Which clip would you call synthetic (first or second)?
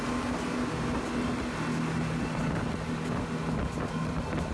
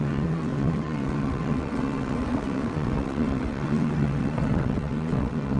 second